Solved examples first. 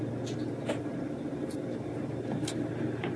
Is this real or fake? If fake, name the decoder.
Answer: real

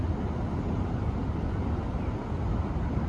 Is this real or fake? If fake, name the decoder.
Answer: real